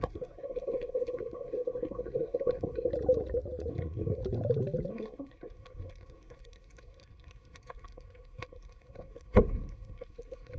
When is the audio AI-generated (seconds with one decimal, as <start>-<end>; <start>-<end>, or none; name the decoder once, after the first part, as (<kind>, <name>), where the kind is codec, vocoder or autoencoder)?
0.0-2.9 (codec, SNAC); 3.7-4.2; 4.9-10.6